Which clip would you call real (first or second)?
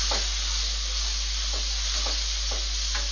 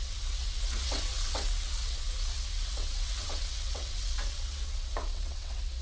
first